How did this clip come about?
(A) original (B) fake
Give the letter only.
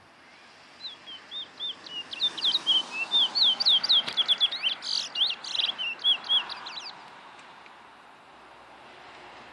A